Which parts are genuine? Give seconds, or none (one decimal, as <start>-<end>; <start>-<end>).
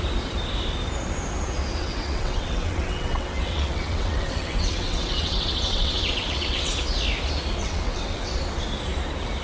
0.0-1.8; 6.7-7.6; 8.4-9.4